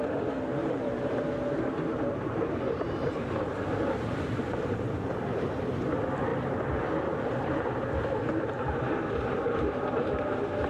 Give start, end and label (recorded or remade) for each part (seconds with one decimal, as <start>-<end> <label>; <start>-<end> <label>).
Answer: 0.0-0.6 recorded; 0.6-1.2 remade; 1.2-1.9 recorded; 1.9-5.7 remade; 5.7-10.7 recorded